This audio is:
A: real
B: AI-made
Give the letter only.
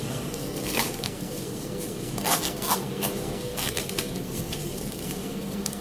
B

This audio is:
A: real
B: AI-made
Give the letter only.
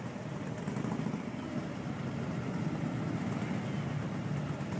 A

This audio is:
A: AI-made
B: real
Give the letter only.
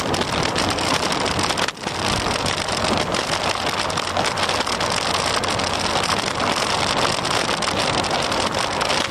B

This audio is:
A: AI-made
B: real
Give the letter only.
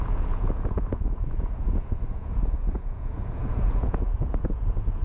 A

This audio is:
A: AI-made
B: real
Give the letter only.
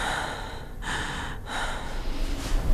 A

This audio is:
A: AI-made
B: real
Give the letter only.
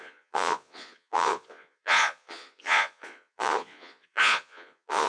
A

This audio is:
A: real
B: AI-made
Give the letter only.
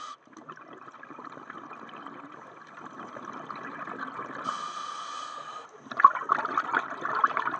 A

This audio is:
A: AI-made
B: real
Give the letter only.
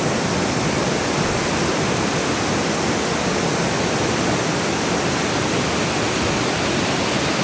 B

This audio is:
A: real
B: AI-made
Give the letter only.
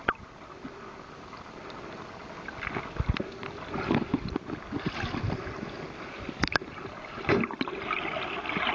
A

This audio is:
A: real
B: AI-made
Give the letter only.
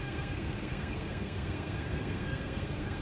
B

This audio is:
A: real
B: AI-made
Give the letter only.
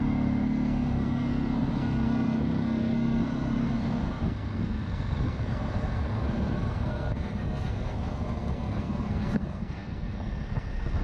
B